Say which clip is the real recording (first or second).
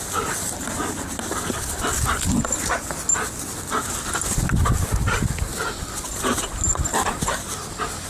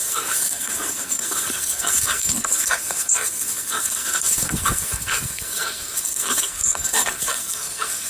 first